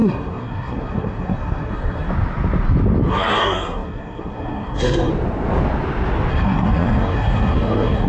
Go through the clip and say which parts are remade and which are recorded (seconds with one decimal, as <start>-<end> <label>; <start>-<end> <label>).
0.0-2.1 remade; 2.1-3.1 recorded; 3.1-5.1 remade; 5.1-6.3 recorded; 6.3-8.1 remade